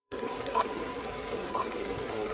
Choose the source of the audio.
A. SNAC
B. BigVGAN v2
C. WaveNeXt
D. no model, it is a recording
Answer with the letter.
A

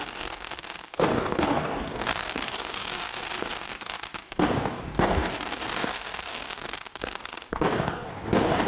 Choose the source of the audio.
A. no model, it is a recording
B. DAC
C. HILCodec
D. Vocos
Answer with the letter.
B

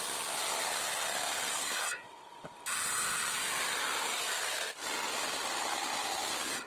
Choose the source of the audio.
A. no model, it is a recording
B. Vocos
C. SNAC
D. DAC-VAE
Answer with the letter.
A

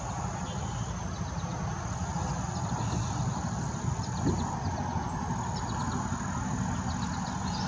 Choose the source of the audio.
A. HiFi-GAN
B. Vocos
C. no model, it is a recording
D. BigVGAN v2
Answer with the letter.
C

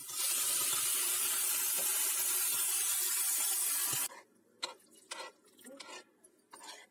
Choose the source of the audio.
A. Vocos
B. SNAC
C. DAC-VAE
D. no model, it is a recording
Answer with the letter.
D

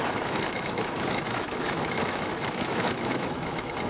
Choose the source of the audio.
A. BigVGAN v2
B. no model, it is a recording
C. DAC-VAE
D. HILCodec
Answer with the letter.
C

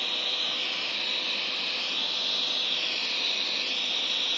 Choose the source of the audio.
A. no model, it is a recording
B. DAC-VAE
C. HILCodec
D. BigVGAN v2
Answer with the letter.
A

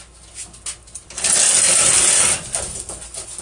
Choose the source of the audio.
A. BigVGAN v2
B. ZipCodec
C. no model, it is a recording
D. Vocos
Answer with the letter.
C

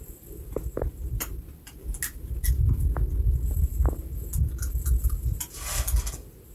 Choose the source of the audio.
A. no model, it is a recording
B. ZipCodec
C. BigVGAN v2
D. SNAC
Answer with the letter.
A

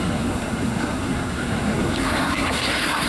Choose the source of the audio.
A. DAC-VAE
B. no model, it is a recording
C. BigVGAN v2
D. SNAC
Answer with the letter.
D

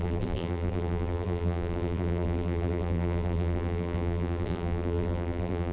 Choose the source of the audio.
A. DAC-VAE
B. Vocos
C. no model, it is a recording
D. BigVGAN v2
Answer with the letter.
D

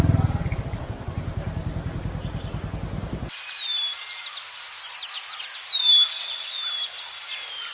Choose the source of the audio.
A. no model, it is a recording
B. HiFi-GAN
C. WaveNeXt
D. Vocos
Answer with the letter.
A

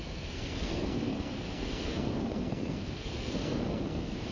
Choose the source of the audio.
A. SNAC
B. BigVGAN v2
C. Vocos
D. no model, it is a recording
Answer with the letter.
A